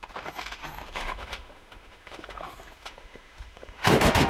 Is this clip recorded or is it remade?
remade